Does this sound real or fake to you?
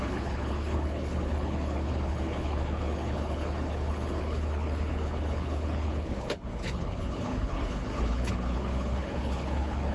fake